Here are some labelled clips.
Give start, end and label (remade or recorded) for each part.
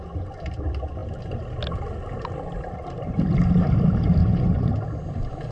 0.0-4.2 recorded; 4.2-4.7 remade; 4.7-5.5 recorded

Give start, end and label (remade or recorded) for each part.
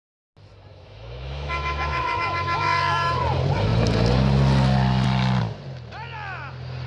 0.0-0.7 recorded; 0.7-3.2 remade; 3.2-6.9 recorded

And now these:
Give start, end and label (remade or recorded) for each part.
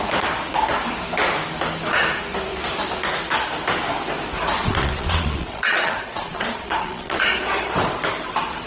0.0-4.6 recorded; 4.6-7.3 remade; 7.3-8.7 recorded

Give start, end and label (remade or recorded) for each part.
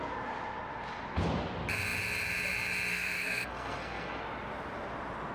0.0-2.9 recorded; 2.9-4.2 remade; 4.2-5.3 recorded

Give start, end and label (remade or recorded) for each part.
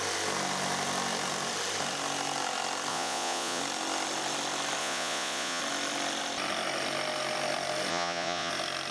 0.0-2.9 recorded; 2.9-3.6 remade; 3.6-4.8 recorded; 4.8-5.6 remade; 5.6-7.9 recorded; 7.9-8.5 remade; 8.5-8.9 recorded